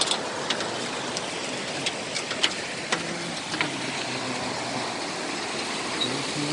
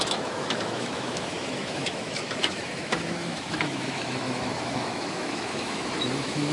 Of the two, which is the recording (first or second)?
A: first